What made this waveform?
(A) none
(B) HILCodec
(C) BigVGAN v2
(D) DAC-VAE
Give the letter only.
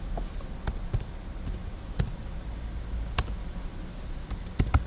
A